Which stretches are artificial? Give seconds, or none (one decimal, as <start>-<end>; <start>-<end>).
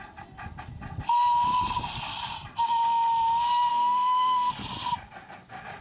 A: 3.7-4.5